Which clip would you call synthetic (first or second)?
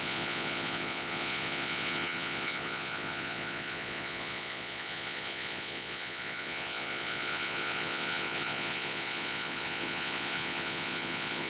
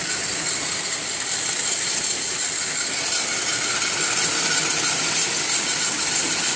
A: first